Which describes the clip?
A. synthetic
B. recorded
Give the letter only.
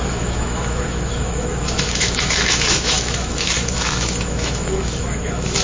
A